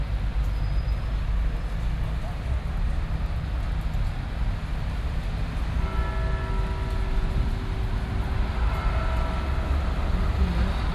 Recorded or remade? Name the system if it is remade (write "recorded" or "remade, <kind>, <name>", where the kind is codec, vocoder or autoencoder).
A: recorded